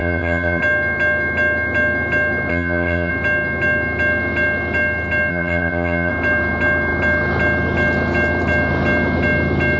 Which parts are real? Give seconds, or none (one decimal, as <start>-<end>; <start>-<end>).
0.6-2.5; 3.1-5.3; 6.1-9.8

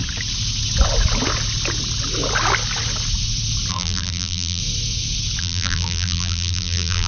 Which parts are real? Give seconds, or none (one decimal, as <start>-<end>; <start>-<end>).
0.0-3.7; 4.6-5.4

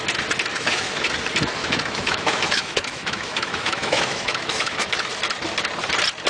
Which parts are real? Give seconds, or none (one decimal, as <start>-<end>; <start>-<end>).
0.0-0.5; 1.1-1.6; 5.1-6.3

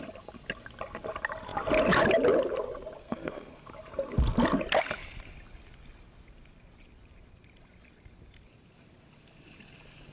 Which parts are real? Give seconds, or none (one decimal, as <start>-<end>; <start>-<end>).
0.0-3.0; 3.7-10.1

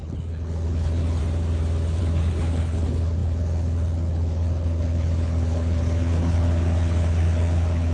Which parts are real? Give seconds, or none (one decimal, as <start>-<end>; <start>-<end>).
1.2-2.0

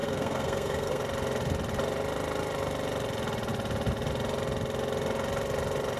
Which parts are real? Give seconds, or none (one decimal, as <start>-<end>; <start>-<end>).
1.0-6.0

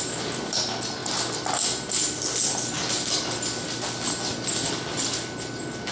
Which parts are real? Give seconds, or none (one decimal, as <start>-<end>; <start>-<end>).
0.0-5.9